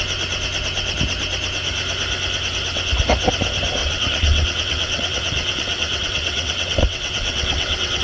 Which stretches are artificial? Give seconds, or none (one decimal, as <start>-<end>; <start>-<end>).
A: 3.8-8.0